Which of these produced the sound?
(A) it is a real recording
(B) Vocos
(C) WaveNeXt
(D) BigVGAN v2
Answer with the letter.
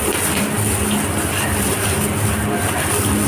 A